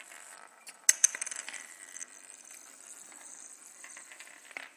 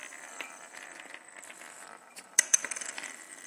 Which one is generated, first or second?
second